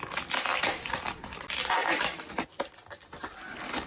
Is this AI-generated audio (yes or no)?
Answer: no